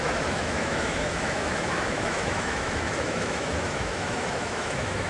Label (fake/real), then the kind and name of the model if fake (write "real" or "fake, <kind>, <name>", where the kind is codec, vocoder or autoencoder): fake, autoencoder, DAC-VAE